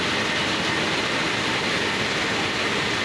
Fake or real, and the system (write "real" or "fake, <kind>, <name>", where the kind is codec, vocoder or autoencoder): real